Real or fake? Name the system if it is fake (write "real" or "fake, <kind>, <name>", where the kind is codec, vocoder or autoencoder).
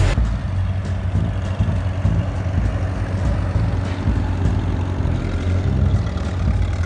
real